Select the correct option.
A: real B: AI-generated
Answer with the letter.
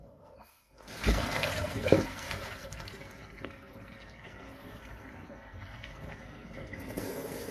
B